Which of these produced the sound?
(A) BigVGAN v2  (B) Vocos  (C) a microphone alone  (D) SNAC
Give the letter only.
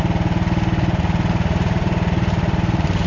C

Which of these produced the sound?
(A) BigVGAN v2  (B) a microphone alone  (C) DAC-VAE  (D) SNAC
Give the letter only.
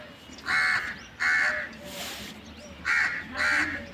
B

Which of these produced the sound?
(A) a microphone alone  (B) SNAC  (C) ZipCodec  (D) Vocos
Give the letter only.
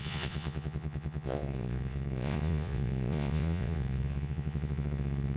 D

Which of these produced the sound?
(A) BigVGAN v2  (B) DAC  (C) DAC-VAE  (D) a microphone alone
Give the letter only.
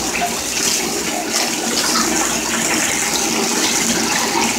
D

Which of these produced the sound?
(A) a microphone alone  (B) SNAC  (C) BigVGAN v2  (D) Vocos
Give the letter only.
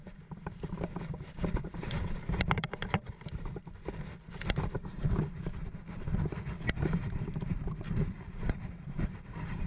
C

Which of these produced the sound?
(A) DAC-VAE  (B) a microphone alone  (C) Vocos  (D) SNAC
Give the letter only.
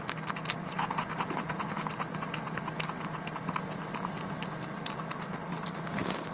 B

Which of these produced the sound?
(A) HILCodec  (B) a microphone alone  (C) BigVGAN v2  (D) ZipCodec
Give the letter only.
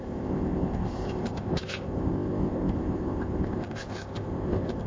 D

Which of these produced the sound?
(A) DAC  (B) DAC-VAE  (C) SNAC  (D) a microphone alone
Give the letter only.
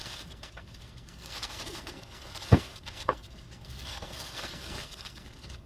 C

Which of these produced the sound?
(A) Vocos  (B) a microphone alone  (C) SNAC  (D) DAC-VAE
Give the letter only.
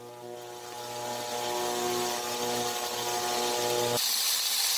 B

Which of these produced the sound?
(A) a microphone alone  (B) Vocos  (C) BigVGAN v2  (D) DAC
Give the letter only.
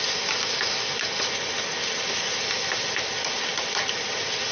A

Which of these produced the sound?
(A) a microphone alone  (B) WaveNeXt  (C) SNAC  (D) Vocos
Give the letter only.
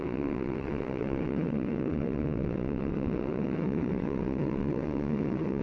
B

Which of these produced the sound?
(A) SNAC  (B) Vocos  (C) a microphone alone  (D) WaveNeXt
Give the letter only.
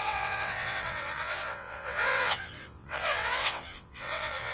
D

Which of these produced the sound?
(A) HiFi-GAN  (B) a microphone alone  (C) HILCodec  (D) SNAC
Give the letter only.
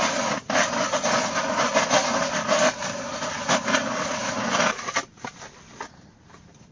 B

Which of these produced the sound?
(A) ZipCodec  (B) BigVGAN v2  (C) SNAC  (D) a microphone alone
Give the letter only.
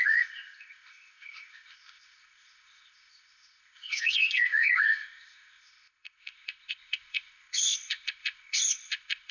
A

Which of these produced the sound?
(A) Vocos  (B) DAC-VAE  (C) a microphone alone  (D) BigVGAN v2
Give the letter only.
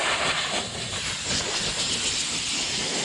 C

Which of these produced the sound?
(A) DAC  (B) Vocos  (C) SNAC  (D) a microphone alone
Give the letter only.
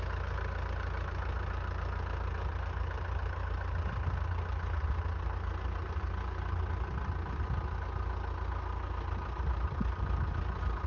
D